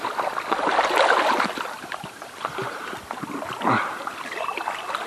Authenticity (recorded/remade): remade